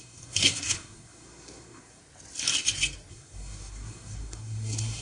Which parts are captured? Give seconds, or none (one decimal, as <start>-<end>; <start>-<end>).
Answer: 2.0-3.1